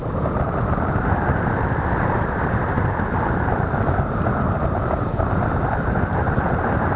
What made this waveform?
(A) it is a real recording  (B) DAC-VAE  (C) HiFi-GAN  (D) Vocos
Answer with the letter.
A